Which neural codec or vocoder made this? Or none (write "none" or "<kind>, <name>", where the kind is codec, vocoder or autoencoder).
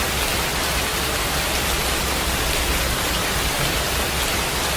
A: none